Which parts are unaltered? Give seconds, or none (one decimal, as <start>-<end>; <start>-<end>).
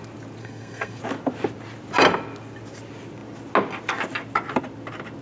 0.0-0.4; 1.0-5.2